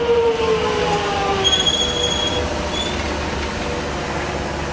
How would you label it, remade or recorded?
recorded